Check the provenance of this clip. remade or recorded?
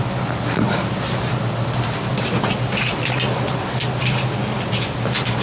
recorded